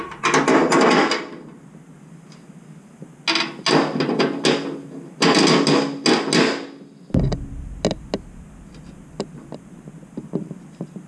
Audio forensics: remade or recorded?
recorded